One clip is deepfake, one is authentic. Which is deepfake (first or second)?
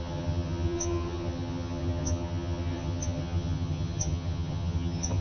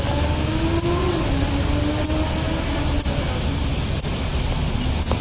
first